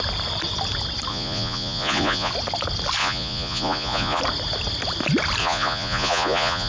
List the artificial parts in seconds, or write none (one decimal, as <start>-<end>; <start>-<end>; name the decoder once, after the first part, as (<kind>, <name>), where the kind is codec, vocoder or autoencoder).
1.1-2.3 (vocoder, Vocos); 3.0-4.2; 5.4-6.7